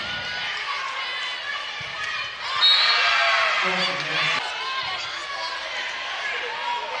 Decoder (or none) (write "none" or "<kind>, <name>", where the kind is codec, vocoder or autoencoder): none